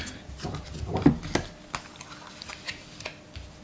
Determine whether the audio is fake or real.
real